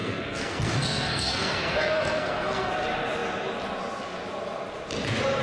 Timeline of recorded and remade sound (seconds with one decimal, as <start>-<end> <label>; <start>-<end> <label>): 0.0-2.7 remade; 2.7-5.4 recorded